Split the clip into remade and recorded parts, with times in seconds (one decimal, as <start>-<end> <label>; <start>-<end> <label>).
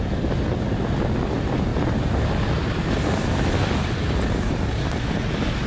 0.0-5.7 recorded